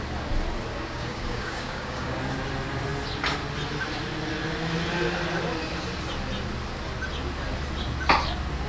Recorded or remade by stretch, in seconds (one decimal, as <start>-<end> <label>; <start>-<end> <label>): 0.0-0.7 recorded; 0.7-2.2 remade; 2.2-8.7 recorded